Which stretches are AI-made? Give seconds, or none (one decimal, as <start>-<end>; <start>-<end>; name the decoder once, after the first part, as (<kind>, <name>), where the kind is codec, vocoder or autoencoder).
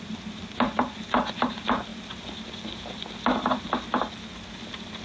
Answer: none